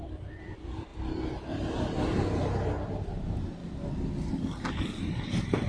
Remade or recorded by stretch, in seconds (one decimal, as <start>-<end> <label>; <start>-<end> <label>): 0.0-0.9 remade; 0.9-1.5 recorded; 1.5-3.6 remade; 3.6-5.3 recorded; 5.3-5.7 remade